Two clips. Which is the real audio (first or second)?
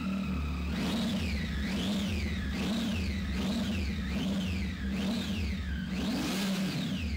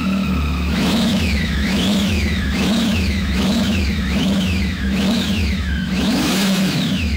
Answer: first